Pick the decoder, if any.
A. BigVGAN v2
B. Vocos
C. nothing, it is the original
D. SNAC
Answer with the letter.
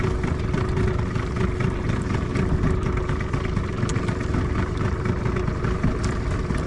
C